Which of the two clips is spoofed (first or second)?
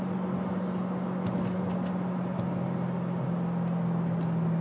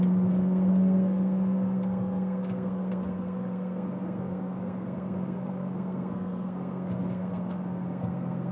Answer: second